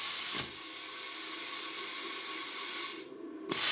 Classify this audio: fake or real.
real